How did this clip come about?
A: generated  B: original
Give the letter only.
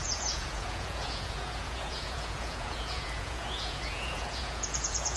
A